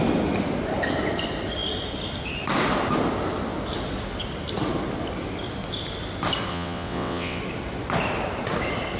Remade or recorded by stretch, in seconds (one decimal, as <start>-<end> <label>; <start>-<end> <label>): 0.0-6.5 recorded; 6.5-7.4 remade; 7.4-9.0 recorded